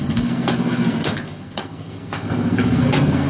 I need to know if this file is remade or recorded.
remade